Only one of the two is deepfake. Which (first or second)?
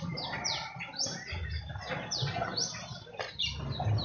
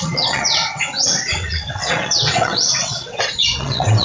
second